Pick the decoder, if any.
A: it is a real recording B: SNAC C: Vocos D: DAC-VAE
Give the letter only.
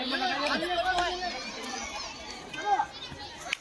A